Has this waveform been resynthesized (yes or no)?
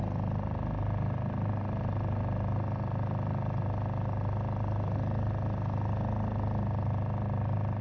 no